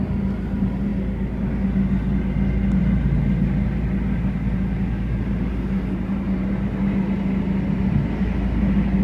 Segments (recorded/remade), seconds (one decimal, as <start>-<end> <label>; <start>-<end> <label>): 0.0-9.0 recorded